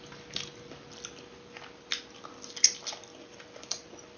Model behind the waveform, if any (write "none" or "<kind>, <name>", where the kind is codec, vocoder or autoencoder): none